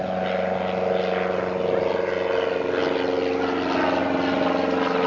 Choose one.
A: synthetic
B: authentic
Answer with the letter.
B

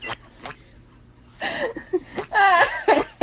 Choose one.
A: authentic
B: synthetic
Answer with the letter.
A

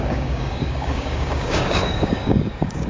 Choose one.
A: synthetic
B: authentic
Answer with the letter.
A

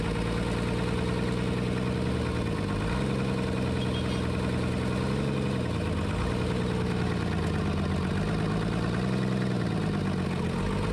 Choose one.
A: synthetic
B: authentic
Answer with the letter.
B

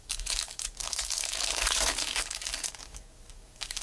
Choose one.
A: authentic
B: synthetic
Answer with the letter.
B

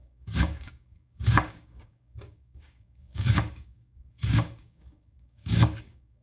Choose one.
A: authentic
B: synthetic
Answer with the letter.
B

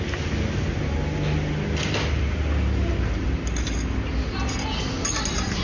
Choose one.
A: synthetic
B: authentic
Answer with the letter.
B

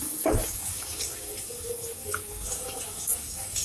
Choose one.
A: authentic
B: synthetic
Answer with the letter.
B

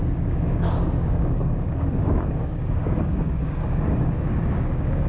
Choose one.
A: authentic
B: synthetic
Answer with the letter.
B